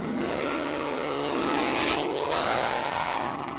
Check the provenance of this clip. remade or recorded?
remade